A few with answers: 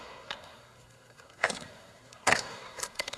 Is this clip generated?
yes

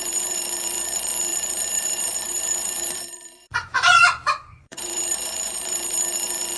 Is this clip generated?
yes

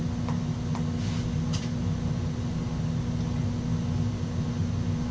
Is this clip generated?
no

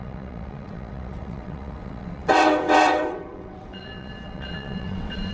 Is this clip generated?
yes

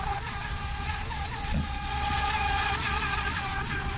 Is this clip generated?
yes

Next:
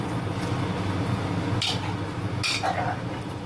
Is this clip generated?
no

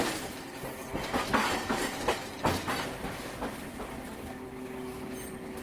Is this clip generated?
no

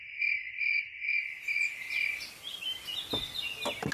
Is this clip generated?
no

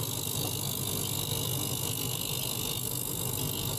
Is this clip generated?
no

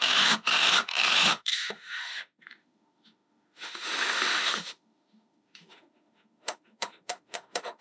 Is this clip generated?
yes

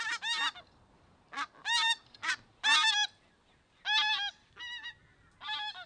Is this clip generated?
no